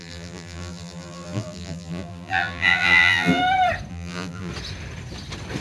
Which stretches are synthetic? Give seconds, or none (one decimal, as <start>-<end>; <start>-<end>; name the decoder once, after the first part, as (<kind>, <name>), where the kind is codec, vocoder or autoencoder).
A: 0.0-3.4 (vocoder, BigVGAN v2); 3.9-4.5